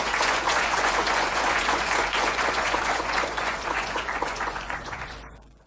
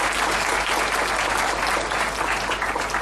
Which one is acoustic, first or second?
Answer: second